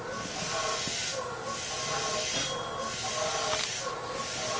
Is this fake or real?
real